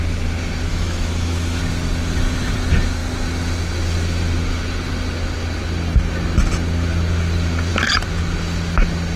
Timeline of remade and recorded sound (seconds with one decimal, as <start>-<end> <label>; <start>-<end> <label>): 0.0-0.7 recorded; 0.7-1.6 remade; 1.6-9.2 recorded